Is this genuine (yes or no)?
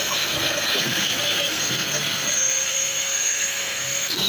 no